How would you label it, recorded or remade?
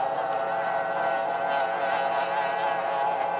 recorded